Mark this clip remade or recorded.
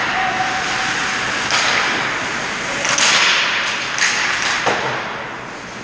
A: recorded